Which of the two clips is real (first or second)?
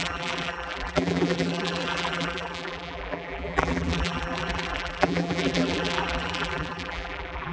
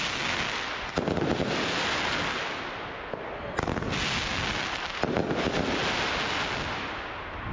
second